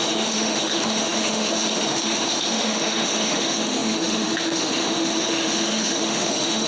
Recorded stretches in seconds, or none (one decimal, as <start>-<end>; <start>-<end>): none